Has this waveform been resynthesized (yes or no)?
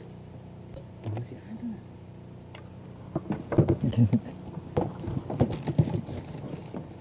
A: no